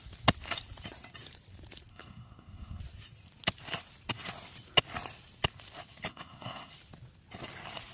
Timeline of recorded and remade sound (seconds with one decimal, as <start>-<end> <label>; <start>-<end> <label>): 0.0-1.9 recorded; 1.9-2.8 remade; 2.8-6.1 recorded; 6.1-6.7 remade; 6.7-7.9 recorded